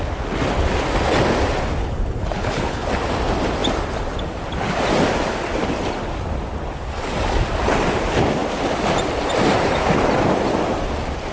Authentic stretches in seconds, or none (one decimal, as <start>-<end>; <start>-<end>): 0.0-1.8; 2.9-11.3